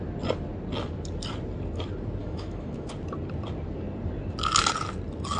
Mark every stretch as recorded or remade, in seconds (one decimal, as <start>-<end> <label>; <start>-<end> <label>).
0.0-2.2 recorded; 2.2-2.9 remade; 2.9-5.4 recorded